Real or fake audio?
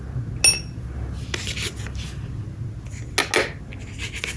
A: real